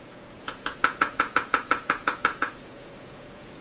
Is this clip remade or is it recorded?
remade